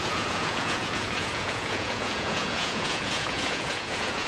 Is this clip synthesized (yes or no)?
yes